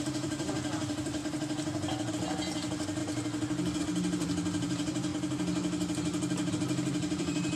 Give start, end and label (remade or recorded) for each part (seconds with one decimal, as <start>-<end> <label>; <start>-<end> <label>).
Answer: 0.0-1.2 remade; 1.2-2.1 recorded; 2.1-3.0 remade; 3.0-3.8 recorded; 3.8-5.1 remade; 5.1-6.5 recorded; 6.5-7.6 remade